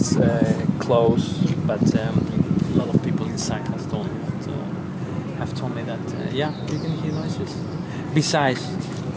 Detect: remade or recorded remade